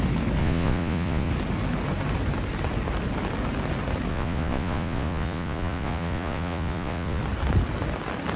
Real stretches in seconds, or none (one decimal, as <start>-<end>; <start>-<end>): 0.0-0.4; 1.3-4.1; 7.2-8.4